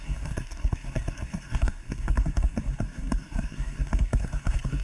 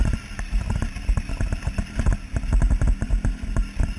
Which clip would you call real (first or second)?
second